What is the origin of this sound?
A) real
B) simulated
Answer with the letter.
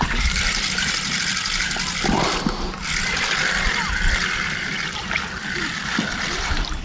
B